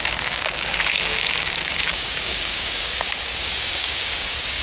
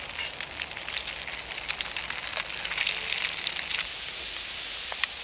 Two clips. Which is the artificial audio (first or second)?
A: first